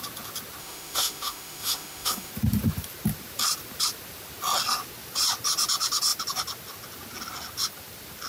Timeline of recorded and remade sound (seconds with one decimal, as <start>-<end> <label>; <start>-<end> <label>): 0.0-0.6 recorded; 0.6-2.3 remade; 2.3-8.3 recorded